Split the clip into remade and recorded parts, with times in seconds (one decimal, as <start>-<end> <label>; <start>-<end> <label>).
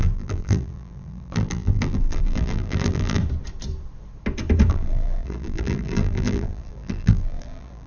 0.0-3.2 remade; 3.2-4.7 recorded; 4.7-7.9 remade